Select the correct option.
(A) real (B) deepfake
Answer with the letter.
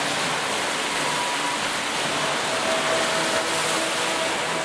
A